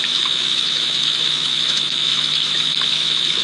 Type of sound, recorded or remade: remade